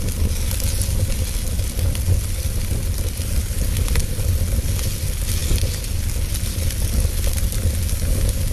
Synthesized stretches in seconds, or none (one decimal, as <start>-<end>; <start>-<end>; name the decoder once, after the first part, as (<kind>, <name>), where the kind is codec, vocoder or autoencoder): none